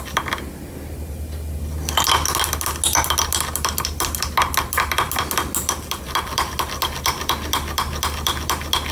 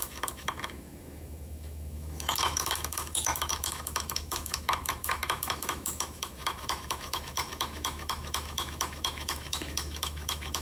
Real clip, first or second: first